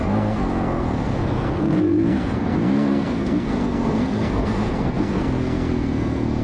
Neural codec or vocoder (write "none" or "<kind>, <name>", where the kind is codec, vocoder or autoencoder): codec, SNAC